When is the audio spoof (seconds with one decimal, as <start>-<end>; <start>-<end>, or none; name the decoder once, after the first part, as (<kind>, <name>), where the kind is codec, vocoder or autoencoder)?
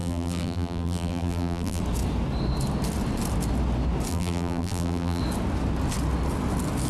0.0-1.8 (vocoder, BigVGAN v2); 4.1-5.2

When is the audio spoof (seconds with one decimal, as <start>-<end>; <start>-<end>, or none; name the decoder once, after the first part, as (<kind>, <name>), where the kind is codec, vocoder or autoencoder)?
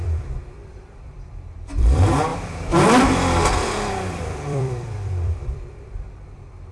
0.0-6.7 (vocoder, BigVGAN v2)